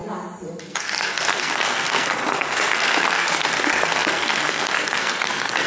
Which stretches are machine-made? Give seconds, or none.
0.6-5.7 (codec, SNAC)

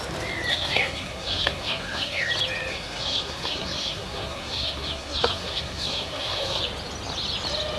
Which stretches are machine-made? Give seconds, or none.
0.5-2.3 (codec, SNAC); 2.7-6.6

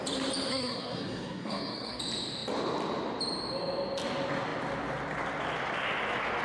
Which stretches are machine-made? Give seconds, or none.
0.5-2.0 (codec, SNAC)

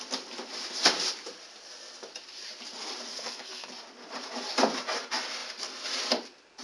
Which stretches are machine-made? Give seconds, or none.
3.1-3.7 (codec, SNAC)

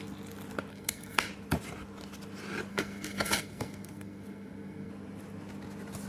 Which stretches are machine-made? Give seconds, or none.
0.7-1.3 (codec, SNAC); 2.7-4.9

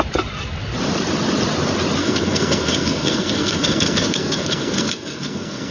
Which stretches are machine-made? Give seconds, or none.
2.0-5.7 (codec, SNAC)

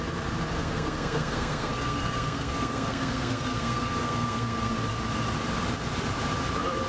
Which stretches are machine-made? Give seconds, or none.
0.6-4.7 (codec, SNAC)

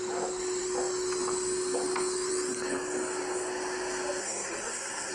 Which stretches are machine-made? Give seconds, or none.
4.2-5.1 (codec, SNAC)